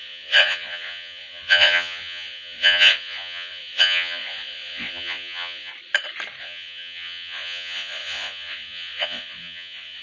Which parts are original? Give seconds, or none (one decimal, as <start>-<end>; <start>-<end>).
5.7-6.4